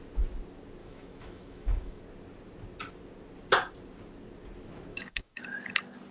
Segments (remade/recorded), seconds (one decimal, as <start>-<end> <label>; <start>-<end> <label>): 0.0-0.8 recorded; 0.8-2.0 remade; 2.0-4.9 recorded; 4.9-5.4 remade; 5.4-6.1 recorded